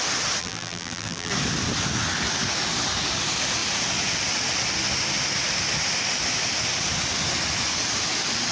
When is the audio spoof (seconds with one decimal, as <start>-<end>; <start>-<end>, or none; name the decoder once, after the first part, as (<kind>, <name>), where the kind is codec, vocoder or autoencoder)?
0.4-1.3 (vocoder, BigVGAN v2)